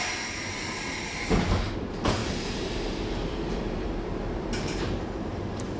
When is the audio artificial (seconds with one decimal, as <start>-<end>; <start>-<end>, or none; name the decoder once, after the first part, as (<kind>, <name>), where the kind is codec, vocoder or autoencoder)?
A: 2.2-5.8 (vocoder, BigVGAN v2)